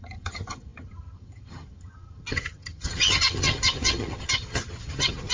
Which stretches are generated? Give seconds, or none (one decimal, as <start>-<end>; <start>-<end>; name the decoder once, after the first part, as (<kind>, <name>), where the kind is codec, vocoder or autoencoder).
0.0-5.3 (vocoder, HiFi-GAN)